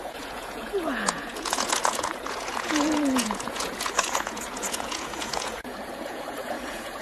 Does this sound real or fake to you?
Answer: fake